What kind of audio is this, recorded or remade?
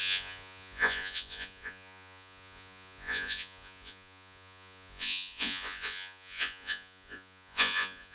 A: remade